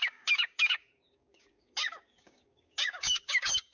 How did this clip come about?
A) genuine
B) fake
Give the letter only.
B